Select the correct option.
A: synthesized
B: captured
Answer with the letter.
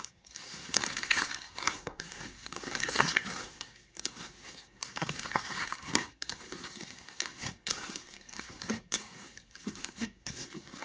A